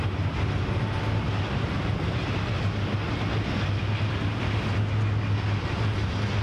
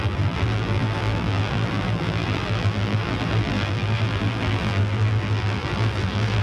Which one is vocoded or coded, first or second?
second